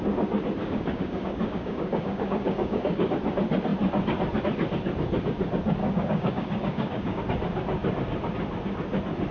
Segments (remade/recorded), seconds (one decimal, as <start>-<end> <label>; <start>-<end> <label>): 0.0-0.6 recorded; 0.6-3.1 remade; 3.1-5.8 recorded; 5.8-7.2 remade; 7.2-9.3 recorded